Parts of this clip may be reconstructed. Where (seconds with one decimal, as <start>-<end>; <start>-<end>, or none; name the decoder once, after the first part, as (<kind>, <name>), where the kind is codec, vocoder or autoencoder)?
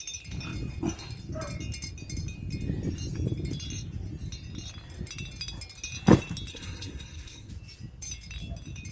6.5-7.5 (codec, SNAC)